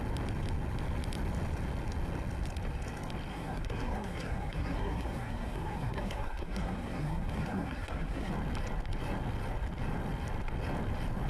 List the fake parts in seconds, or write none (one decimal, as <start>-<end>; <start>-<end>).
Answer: 3.3-8.3